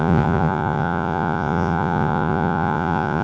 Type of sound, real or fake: fake